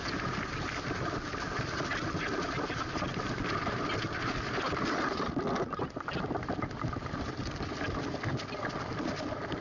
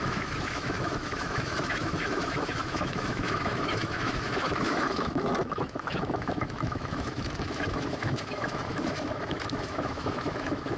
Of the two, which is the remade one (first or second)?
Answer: second